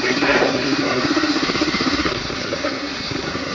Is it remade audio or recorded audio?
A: remade